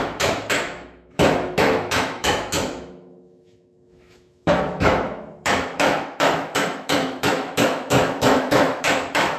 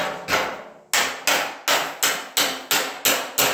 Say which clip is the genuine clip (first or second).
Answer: second